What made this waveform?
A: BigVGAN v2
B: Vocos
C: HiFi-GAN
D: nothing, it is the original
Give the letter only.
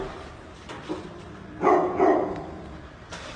A